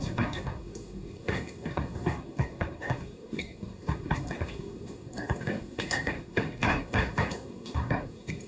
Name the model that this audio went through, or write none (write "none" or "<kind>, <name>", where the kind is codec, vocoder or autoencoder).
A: codec, SNAC